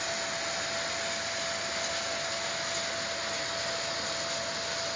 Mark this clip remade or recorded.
recorded